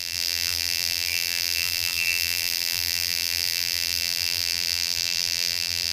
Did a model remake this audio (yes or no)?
yes